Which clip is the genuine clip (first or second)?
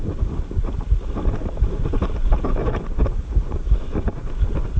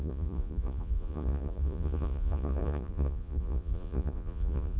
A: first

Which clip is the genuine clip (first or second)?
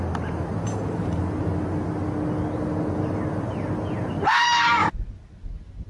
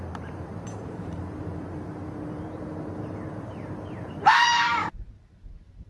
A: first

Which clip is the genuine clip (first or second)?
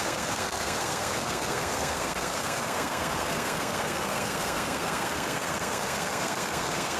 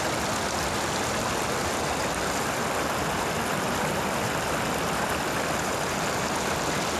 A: second